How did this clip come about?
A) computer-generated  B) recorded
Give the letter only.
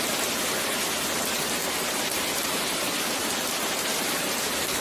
B